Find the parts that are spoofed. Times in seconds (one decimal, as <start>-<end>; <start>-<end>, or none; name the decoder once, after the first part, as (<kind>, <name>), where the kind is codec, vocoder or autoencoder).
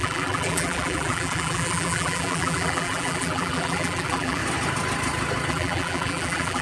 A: 0.0-4.4 (vocoder, BigVGAN v2); 5.5-6.6